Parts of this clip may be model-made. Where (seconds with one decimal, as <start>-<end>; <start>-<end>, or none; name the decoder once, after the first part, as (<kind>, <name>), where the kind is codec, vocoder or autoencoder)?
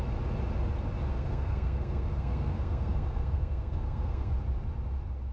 1.1-4.3 (codec, SNAC)